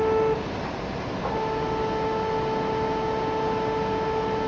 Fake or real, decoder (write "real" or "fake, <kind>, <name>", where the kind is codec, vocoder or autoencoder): real